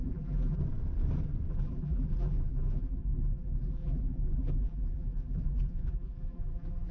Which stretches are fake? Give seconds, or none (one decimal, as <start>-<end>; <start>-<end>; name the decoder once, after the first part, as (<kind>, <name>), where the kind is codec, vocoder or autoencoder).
0.0-0.6 (vocoder, BigVGAN v2); 1.5-6.9